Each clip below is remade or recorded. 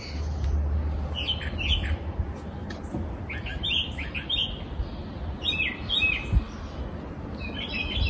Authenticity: recorded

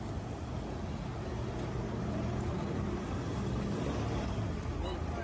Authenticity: recorded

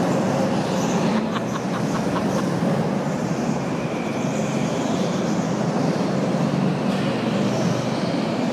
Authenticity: recorded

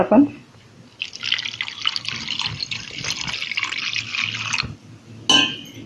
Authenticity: recorded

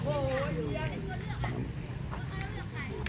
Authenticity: recorded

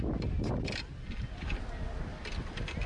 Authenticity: recorded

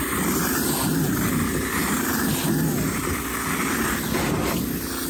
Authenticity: recorded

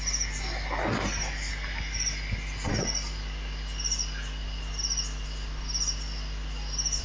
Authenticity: recorded